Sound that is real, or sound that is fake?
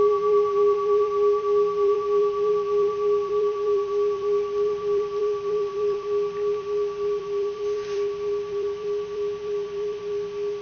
fake